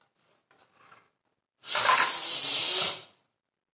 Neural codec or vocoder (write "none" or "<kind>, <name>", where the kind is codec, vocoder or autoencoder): none